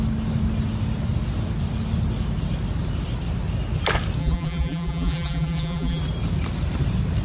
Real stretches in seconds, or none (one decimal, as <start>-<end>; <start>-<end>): 0.0-4.2; 6.0-7.2